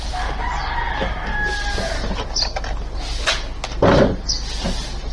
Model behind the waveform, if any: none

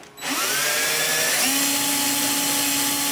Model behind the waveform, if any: none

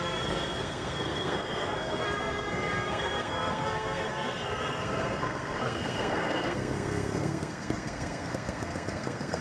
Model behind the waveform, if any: codec, SNAC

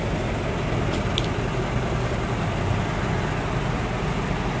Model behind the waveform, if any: none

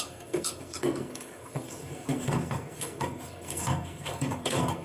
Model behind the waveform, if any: codec, SNAC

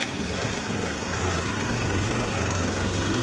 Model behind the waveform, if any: codec, SNAC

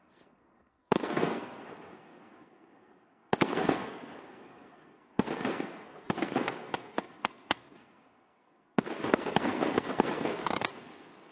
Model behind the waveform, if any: codec, SNAC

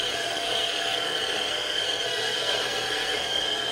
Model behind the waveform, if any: codec, SNAC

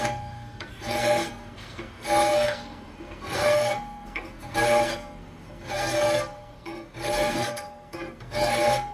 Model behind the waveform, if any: codec, SNAC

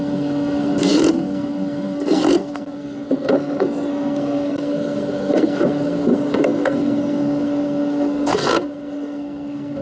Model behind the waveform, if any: codec, SNAC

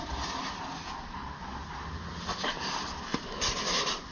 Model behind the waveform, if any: none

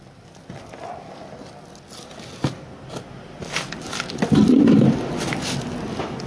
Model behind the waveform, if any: none